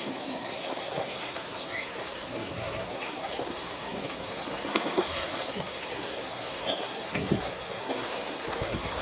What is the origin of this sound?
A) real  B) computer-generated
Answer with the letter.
B